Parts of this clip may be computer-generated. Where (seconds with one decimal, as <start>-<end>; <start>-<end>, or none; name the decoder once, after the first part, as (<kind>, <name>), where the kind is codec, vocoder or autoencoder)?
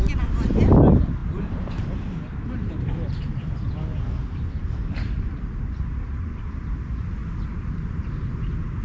7.2-8.4 (vocoder, BigVGAN v2)